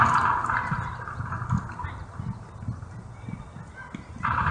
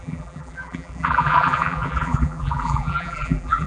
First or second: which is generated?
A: second